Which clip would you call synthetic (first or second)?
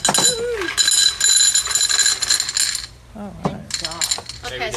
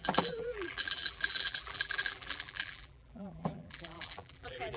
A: second